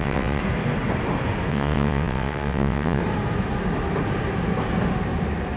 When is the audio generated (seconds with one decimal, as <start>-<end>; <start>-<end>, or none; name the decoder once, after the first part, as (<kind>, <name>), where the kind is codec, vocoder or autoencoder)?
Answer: 0.0-0.4 (vocoder, WaveNeXt); 1.5-3.0